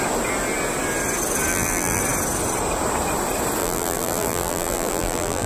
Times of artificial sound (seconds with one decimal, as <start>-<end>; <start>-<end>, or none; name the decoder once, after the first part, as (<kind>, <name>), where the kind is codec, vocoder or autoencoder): 1.5-2.0 (vocoder, BigVGAN v2); 3.6-5.5